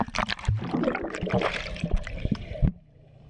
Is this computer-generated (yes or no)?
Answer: yes